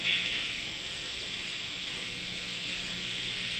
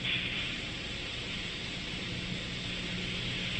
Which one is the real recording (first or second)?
second